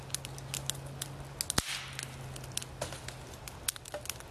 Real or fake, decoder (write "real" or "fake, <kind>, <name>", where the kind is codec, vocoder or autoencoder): real